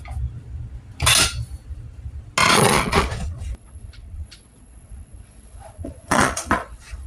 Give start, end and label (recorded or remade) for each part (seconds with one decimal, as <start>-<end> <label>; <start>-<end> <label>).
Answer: 0.0-2.4 recorded; 2.4-7.1 remade